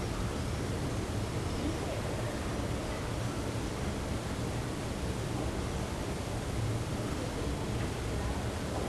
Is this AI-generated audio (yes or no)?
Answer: no